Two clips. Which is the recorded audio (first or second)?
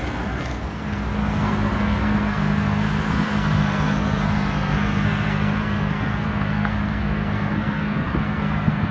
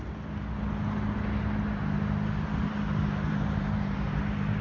second